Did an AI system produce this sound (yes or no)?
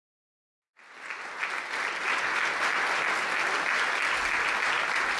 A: no